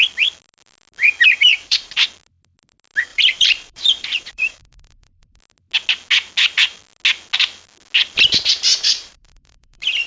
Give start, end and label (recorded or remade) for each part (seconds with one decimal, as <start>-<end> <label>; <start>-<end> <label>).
0.0-1.5 recorded; 1.5-2.1 remade; 2.1-3.1 recorded; 3.1-5.4 remade; 5.4-8.7 recorded; 8.7-10.1 remade